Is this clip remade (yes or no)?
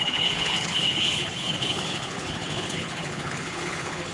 yes